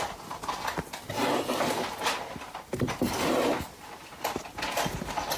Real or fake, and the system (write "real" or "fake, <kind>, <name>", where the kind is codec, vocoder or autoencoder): real